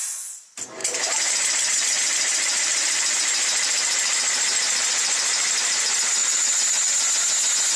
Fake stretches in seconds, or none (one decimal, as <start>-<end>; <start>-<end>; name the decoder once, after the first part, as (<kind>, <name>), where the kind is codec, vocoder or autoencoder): 0.8-5.5 (vocoder, BigVGAN v2); 6.2-6.9